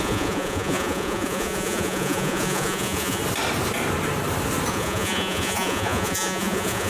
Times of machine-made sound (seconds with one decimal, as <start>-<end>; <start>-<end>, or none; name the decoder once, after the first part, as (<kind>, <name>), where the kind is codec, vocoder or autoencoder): 0.0-3.2 (vocoder, Vocos); 4.7-6.9